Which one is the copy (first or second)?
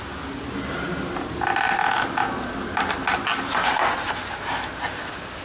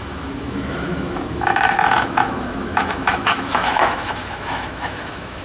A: second